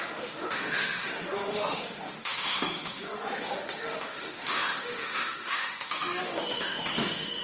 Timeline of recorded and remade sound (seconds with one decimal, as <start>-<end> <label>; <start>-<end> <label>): 0.0-7.4 remade